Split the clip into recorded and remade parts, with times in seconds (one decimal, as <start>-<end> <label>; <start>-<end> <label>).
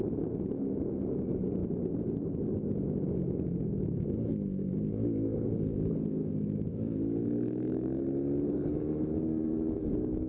0.0-5.7 recorded; 5.7-6.3 remade; 6.3-6.7 recorded; 6.7-8.0 remade; 8.0-10.3 recorded